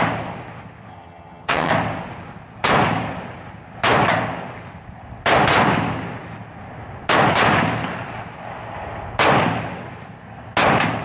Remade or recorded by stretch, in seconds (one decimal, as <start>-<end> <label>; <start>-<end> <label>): 0.0-0.9 recorded; 0.9-1.7 remade; 1.7-11.0 recorded

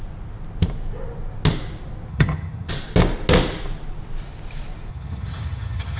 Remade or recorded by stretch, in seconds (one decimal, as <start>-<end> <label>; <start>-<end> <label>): 0.0-2.1 recorded; 2.1-2.7 remade; 2.7-4.9 recorded; 4.9-6.0 remade

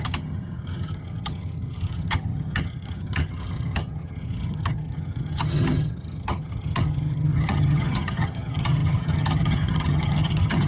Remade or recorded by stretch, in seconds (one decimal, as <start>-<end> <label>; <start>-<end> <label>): 0.0-10.7 remade

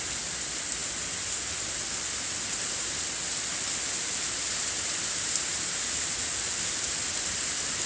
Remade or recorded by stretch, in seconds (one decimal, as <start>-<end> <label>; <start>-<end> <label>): 0.0-7.9 recorded

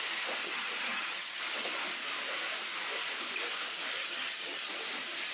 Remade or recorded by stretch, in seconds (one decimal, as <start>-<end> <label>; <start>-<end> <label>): 0.0-0.4 recorded; 0.4-1.4 remade; 1.4-4.0 recorded; 4.0-4.7 remade; 4.7-5.3 recorded

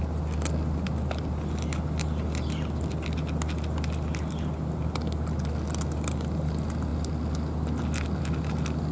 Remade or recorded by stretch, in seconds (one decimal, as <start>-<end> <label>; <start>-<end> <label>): 0.0-8.9 recorded

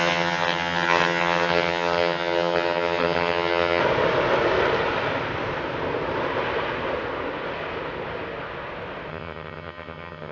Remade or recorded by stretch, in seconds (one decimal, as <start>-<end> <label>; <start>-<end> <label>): 0.0-3.8 remade; 3.8-9.1 recorded; 9.1-10.3 remade

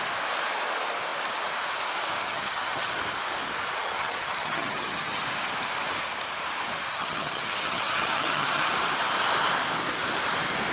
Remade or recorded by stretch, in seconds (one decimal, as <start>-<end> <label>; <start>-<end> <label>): 0.0-2.2 recorded; 2.2-2.9 remade; 2.9-3.8 recorded; 3.8-5.2 remade; 5.2-6.9 recorded; 6.9-8.7 remade; 8.7-10.7 recorded